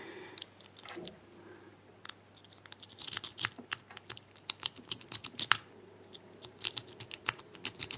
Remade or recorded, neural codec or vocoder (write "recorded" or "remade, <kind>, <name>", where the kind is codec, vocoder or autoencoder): recorded